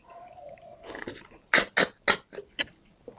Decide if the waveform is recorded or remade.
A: recorded